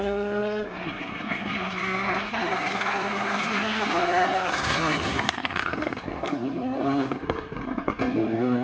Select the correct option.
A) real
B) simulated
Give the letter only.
B